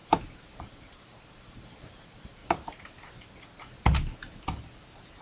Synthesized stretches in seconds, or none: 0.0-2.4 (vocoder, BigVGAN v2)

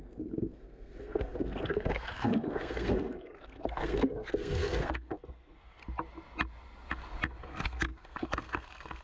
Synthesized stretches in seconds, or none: 0.0-5.8 (codec, SNAC); 7.4-9.0

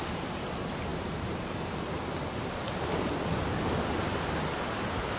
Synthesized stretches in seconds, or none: none